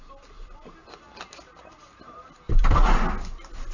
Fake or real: real